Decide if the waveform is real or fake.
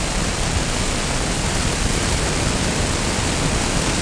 real